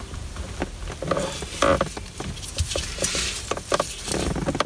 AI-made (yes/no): no